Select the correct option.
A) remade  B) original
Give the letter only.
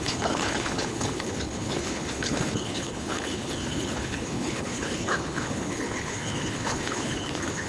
A